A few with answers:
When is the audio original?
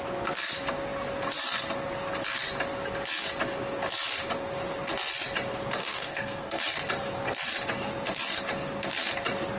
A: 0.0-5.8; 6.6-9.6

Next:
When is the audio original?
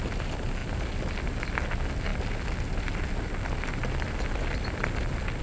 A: 0.0-5.4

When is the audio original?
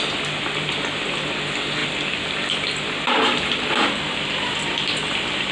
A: 0.0-5.5